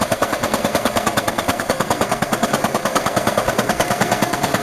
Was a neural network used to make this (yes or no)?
yes